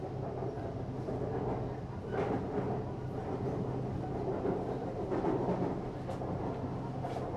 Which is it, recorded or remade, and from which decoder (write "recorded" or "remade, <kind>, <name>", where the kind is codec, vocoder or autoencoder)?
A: recorded